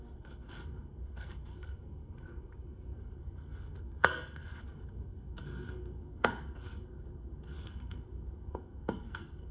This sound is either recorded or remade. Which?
remade